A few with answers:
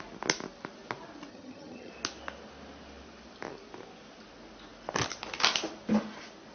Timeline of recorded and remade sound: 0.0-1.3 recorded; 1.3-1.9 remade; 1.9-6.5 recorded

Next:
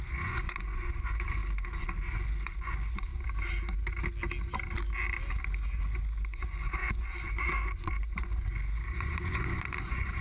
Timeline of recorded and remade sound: 0.0-1.4 remade; 1.4-2.1 recorded; 2.1-3.1 remade; 3.1-5.8 recorded; 5.8-10.2 remade

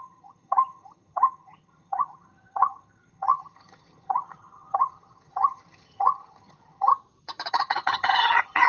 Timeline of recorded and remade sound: 0.0-6.9 remade; 6.9-7.5 recorded; 7.5-8.7 remade

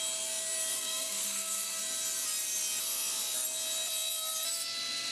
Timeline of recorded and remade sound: 0.0-0.7 recorded; 0.7-1.8 remade; 1.8-5.1 recorded

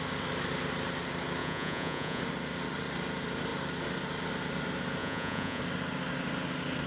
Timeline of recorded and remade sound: 0.0-1.4 recorded; 1.4-2.2 remade; 2.2-5.0 recorded; 5.0-5.6 remade; 5.6-6.9 recorded